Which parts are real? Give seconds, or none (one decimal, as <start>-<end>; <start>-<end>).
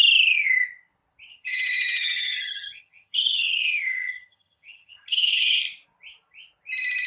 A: 0.0-1.3; 5.6-7.1